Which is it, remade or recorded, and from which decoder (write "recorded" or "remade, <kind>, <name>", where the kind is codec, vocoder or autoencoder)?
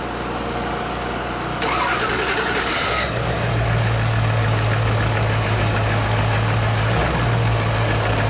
remade, codec, DAC